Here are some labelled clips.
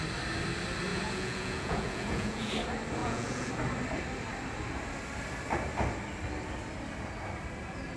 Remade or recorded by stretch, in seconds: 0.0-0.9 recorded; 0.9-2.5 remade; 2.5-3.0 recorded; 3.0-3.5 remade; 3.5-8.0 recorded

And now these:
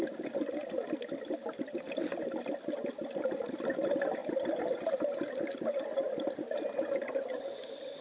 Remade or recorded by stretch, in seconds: 0.0-8.0 recorded

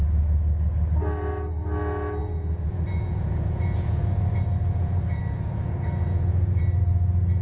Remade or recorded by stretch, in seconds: 0.0-2.2 recorded; 2.2-6.6 remade; 6.6-7.4 recorded

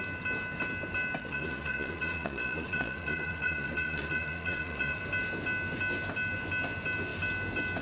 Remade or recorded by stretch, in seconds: 0.0-1.2 recorded; 1.2-5.0 remade; 5.0-7.8 recorded